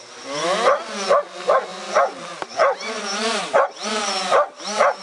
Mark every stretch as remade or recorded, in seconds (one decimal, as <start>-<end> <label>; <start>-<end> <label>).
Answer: 0.0-1.7 recorded; 1.7-5.0 remade